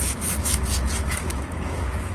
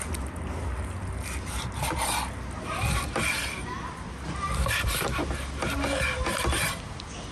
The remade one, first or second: first